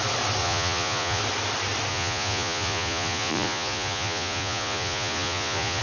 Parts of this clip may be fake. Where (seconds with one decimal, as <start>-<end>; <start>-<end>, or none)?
0.4-1.2; 1.9-5.8